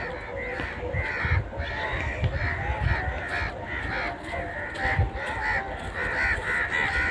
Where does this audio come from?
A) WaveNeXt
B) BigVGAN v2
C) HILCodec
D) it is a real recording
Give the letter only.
D